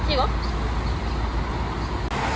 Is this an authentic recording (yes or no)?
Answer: yes